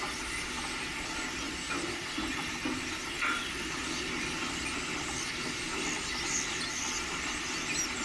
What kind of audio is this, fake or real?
real